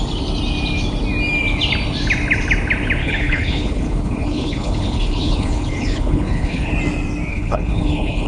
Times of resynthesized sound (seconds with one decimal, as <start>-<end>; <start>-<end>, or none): 3.0-6.7; 7.3-8.3